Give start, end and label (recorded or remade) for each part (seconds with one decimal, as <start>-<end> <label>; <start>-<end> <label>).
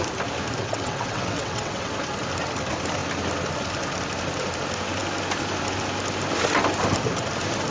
0.0-0.6 recorded; 0.6-1.9 remade; 1.9-7.7 recorded